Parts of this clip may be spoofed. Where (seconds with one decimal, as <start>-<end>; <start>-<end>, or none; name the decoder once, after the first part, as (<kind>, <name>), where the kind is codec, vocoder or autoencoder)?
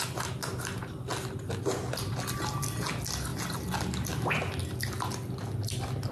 none